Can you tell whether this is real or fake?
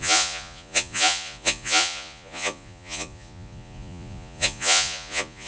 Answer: fake